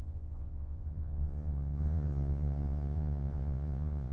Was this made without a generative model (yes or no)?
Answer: no